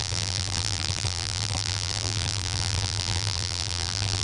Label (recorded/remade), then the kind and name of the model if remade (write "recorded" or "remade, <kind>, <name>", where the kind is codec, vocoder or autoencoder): remade, vocoder, BigVGAN v2